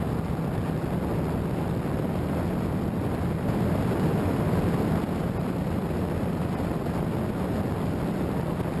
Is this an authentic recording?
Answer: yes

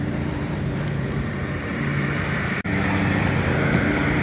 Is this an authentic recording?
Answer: no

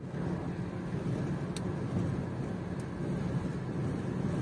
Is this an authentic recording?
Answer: yes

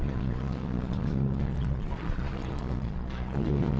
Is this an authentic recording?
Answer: no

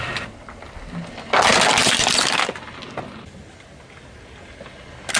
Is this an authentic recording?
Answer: yes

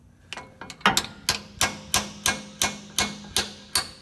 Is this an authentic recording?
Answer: yes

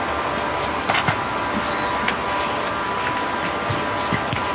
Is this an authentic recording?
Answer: yes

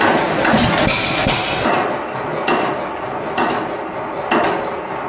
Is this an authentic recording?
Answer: yes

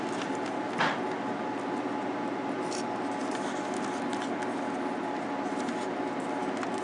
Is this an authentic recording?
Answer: yes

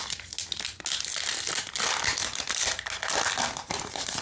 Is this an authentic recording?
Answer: yes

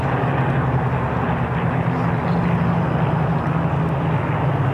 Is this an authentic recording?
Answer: yes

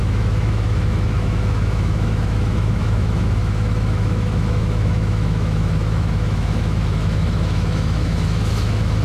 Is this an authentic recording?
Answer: no